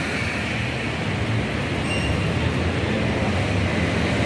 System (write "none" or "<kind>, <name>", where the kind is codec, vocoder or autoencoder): none